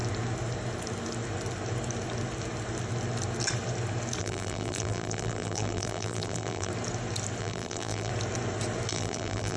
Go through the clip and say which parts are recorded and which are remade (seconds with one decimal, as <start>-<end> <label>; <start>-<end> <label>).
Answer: 0.0-4.2 recorded; 4.2-6.7 remade; 6.7-7.4 recorded; 7.4-8.1 remade; 8.1-8.9 recorded; 8.9-9.6 remade